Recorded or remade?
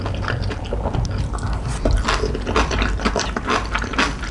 recorded